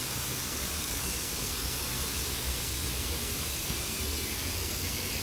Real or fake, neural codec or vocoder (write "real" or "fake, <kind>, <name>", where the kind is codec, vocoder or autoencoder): fake, codec, SNAC